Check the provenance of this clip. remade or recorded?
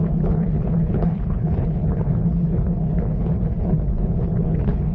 remade